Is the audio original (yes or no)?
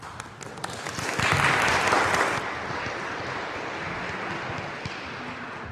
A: yes